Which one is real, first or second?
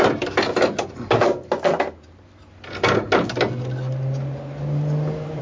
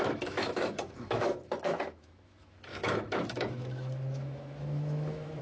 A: first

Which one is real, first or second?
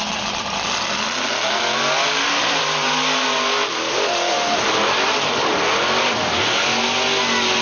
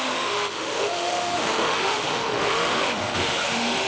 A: first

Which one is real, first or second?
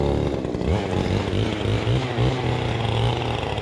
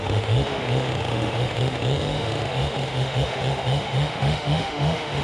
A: first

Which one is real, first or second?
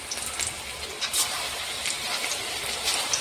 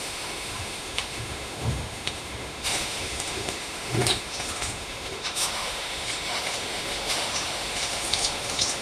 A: first